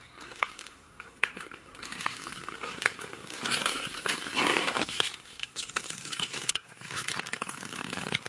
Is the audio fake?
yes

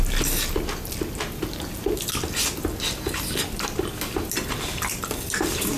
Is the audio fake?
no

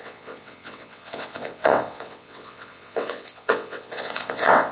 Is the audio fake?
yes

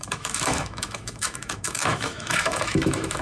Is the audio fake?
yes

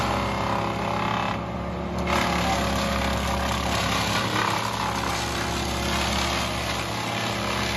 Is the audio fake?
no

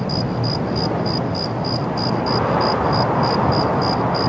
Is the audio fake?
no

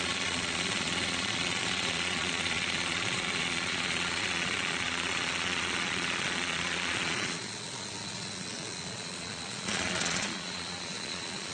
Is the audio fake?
yes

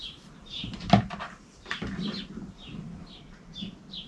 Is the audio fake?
yes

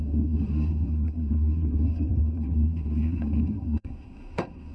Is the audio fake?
yes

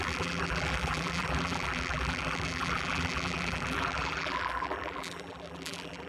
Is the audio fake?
yes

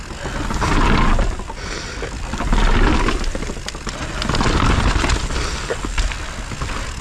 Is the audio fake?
no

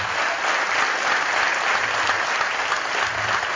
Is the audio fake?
no